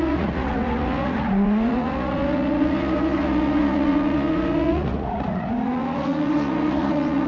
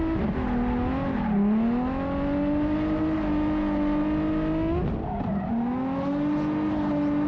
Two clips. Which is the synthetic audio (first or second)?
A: first